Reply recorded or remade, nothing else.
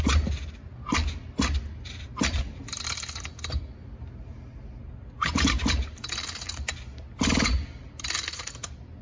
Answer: recorded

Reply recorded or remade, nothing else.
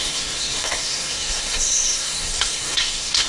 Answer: remade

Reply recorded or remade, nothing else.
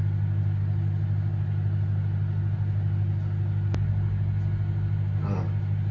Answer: recorded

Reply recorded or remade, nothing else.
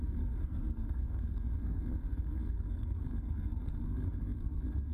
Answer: remade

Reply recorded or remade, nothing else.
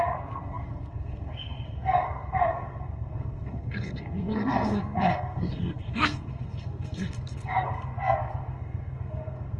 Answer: remade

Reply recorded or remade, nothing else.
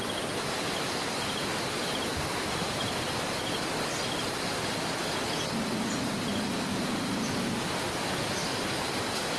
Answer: recorded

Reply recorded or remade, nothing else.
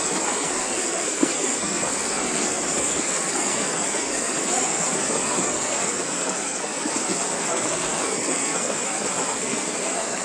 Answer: remade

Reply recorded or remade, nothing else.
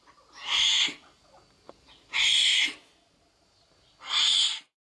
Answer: recorded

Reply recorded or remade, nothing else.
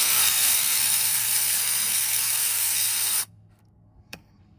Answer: remade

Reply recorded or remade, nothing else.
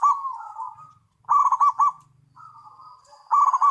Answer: recorded